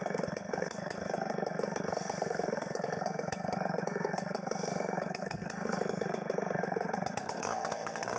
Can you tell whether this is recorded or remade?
remade